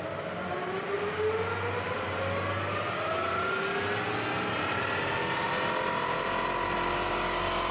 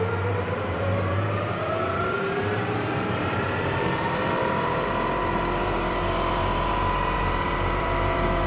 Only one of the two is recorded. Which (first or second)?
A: first